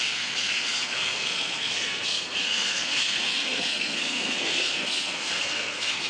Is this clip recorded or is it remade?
remade